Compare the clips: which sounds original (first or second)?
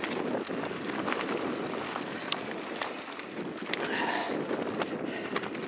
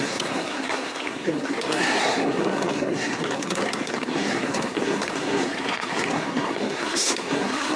first